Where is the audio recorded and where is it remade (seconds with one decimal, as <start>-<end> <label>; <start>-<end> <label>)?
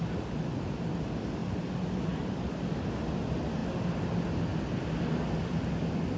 0.0-6.2 recorded